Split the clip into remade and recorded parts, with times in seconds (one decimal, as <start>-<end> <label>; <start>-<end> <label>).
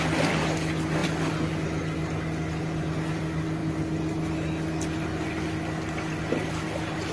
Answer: 0.0-7.1 recorded